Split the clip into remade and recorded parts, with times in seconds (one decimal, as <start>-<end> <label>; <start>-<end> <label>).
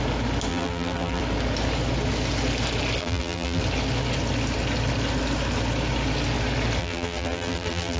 0.0-0.5 recorded; 0.5-1.2 remade; 1.2-3.0 recorded; 3.0-3.6 remade; 3.6-6.8 recorded; 6.8-8.0 remade